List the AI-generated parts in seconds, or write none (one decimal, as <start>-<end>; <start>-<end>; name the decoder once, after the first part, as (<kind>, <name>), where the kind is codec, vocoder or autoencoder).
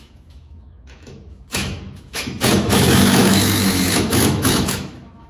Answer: 0.0-5.3 (autoencoder, DAC-VAE)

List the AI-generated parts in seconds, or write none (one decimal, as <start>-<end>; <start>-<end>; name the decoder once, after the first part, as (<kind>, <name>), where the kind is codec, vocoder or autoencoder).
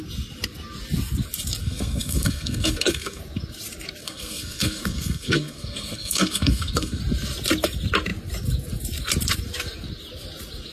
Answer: 1.6-3.2 (codec, SNAC); 4.0-7.0